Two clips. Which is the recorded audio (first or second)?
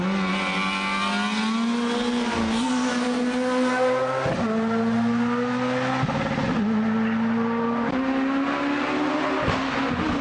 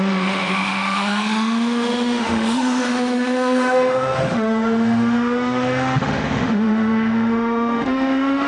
first